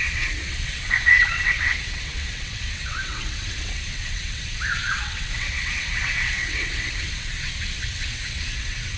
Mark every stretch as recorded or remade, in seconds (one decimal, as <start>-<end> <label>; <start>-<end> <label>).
0.0-9.0 remade